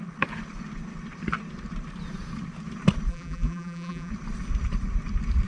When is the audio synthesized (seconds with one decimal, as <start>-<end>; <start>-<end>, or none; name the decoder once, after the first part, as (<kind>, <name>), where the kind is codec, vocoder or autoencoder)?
3.1-4.1 (vocoder, BigVGAN v2)